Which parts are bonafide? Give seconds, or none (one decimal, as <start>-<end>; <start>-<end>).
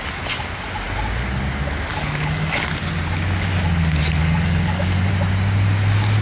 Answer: 0.0-1.9; 2.7-4.2; 5.1-6.2